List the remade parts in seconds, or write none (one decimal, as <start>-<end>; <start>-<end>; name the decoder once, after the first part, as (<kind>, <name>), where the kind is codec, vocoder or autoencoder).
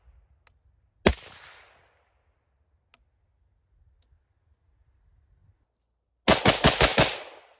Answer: 6.9-7.6 (vocoder, BigVGAN v2)